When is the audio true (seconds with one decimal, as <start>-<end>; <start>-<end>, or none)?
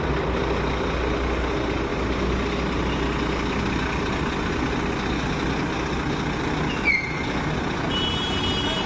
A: 0.0-8.9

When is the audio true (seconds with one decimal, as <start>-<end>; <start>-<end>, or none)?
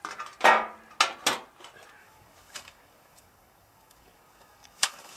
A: 0.0-2.0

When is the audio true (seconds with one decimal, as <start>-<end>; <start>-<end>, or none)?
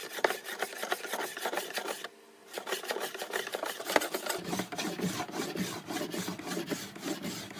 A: 0.6-1.3; 1.8-2.4; 6.0-7.6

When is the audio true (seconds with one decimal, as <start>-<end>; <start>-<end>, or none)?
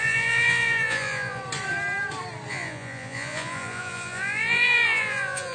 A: 1.4-2.5